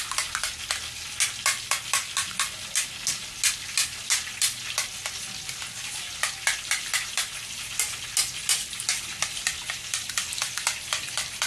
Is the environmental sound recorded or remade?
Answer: recorded